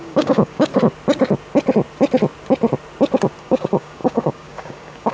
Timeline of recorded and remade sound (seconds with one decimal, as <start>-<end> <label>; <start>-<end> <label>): 0.0-0.7 remade; 0.7-3.4 recorded; 3.4-5.1 remade